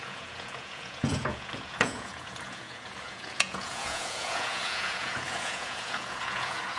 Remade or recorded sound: remade